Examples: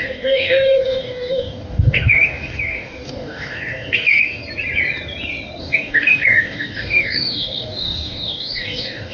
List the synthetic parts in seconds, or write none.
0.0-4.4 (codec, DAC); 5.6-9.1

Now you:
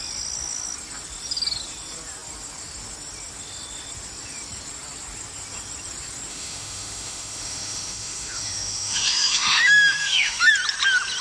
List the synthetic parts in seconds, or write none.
6.3-10.5 (autoencoder, DAC-VAE)

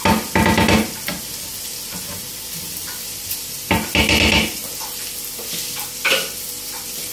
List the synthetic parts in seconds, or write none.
none

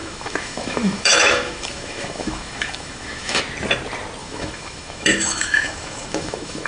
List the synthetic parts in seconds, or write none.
0.0-3.4 (autoencoder, DAC-VAE); 4.2-6.7